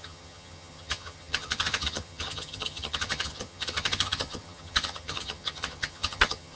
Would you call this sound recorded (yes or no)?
no